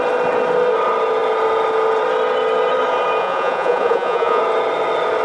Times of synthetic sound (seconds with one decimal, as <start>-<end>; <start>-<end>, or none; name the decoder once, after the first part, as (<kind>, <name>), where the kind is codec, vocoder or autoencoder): 3.2-4.4 (vocoder, Vocos)